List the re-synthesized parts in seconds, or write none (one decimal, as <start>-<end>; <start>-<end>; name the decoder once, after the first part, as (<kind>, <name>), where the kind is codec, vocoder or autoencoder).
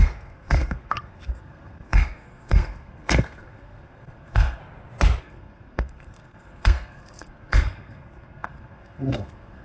0.0-4.6 (codec, SNAC); 5.2-9.6